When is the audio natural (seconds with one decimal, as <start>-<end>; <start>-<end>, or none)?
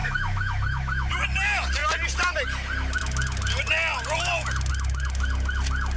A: 1.1-6.0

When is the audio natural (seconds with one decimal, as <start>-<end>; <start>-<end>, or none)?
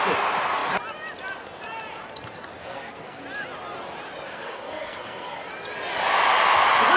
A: 0.0-2.6; 3.2-4.3; 5.4-7.0